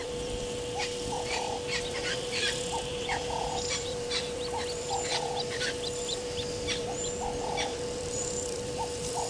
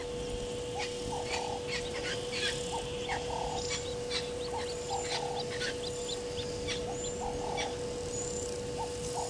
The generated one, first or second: first